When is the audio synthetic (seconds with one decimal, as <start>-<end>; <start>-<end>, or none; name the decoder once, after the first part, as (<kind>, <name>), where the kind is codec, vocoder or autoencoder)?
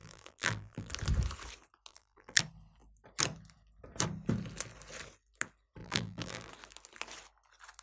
0.0-0.9 (vocoder, BigVGAN v2); 1.9-2.4; 5.8-6.5